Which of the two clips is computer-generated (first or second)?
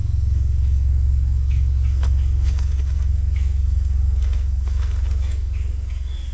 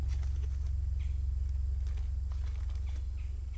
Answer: first